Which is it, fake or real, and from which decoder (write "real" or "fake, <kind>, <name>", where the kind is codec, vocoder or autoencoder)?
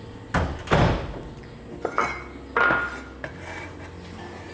real